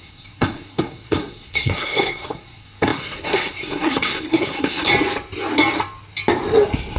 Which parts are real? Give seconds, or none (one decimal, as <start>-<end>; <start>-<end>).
4.9-7.0